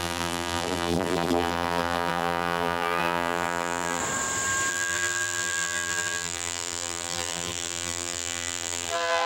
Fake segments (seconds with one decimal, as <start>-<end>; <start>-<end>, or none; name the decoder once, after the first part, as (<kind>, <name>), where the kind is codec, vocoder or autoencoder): 0.0-4.0 (vocoder, BigVGAN v2); 4.7-9.3